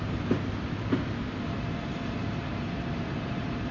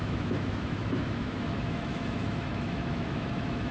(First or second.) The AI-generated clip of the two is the second